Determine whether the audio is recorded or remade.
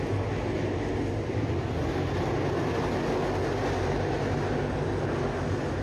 recorded